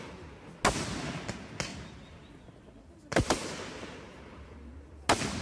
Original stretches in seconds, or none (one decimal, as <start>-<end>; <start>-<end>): 0.0-1.7; 4.9-5.4